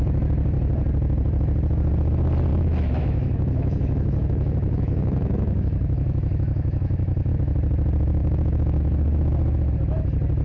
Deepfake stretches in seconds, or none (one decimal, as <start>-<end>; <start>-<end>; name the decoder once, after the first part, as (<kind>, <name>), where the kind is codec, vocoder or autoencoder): 2.5-7.3 (autoencoder, DAC-VAE); 8.2-8.8